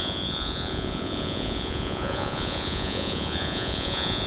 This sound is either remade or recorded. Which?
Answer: remade